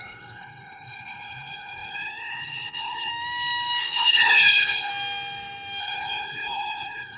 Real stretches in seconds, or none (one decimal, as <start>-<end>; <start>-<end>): 3.1-3.8; 4.9-5.8